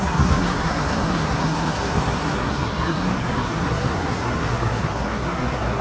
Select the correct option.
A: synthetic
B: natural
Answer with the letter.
A